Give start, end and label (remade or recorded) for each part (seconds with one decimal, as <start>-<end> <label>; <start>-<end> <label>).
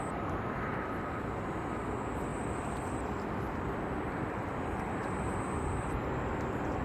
0.0-2.3 recorded; 2.3-3.1 remade; 3.1-6.8 recorded